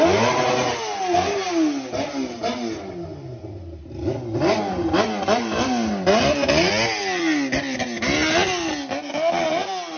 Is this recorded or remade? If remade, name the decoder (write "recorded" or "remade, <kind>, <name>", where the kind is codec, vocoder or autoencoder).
recorded